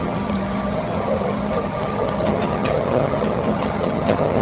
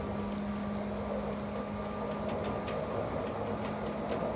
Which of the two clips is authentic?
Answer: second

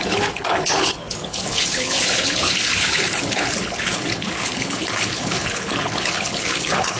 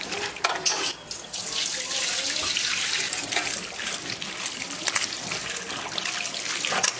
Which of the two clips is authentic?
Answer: second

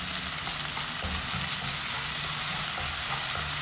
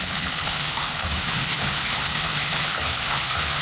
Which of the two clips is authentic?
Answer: first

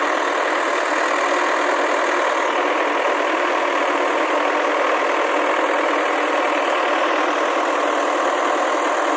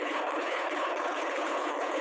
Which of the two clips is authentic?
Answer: first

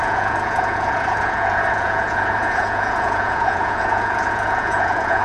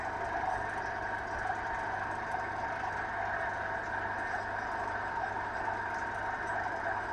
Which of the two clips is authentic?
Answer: second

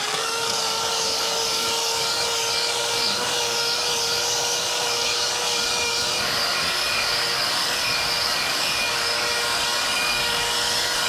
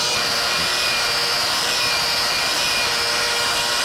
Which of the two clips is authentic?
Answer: second